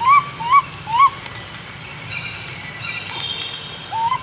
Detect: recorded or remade recorded